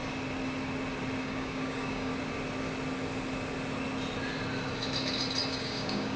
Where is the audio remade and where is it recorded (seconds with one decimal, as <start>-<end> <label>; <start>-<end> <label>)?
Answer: 0.0-1.2 recorded; 1.2-2.1 remade; 2.1-5.5 recorded; 5.5-6.2 remade